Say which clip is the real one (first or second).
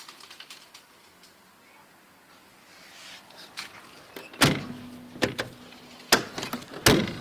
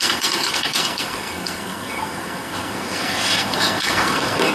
first